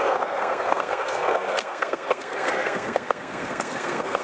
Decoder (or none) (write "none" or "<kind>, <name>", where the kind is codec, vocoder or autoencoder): codec, SNAC